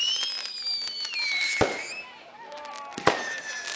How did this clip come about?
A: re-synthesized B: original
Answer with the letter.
B